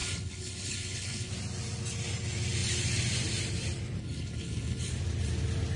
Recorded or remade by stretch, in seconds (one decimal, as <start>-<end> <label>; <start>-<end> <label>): 0.0-1.3 remade; 1.3-4.0 recorded; 4.0-4.9 remade; 4.9-5.8 recorded